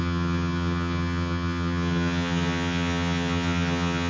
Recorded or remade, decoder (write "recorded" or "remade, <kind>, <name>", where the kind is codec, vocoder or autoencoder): remade, vocoder, HiFi-GAN